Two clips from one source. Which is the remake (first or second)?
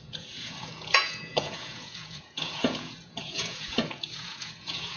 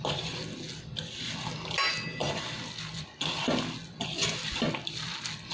first